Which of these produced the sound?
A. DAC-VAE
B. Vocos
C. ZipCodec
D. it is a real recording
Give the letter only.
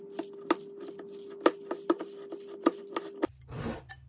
D